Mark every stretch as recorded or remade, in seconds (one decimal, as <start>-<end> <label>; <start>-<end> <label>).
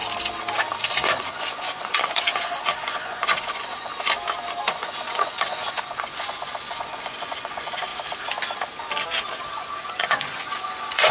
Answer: 0.0-0.8 recorded; 0.8-3.9 remade; 3.9-4.7 recorded; 4.7-7.9 remade; 7.9-9.5 recorded; 9.5-11.1 remade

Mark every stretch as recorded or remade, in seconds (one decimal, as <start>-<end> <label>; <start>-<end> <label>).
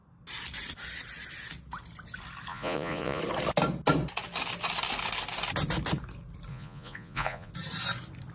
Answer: 0.0-2.5 recorded; 2.5-3.2 remade; 3.2-6.5 recorded; 6.5-7.5 remade; 7.5-8.3 recorded